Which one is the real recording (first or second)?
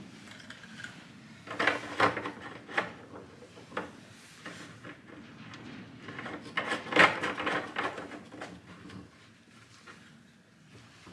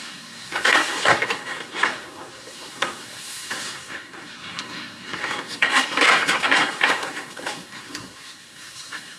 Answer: first